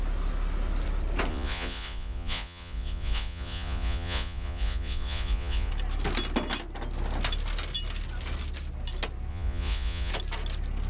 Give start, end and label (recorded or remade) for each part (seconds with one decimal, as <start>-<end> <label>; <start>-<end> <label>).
0.0-1.3 recorded; 1.3-5.7 remade; 5.7-9.3 recorded; 9.3-10.1 remade; 10.1-10.9 recorded